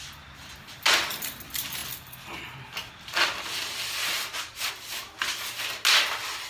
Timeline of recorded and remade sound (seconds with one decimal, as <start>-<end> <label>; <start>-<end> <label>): 0.0-6.5 recorded